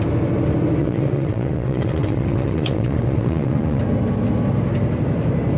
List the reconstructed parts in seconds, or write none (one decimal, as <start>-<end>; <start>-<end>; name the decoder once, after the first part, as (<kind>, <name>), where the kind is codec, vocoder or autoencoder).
0.8-3.8 (vocoder, WaveNeXt)